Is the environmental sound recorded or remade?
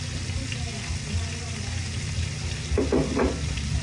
recorded